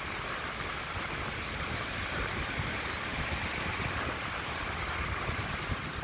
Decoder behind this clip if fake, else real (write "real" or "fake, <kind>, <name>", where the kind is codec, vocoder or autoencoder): real